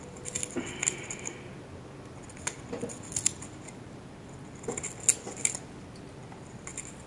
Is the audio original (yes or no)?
yes